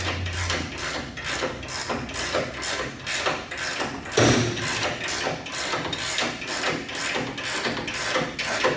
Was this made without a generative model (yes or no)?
yes